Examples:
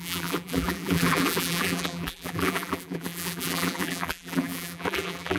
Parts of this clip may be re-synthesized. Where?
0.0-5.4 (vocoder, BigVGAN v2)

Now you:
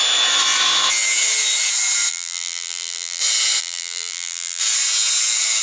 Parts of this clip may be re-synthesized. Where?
2.1-3.2 (vocoder, BigVGAN v2); 3.6-4.6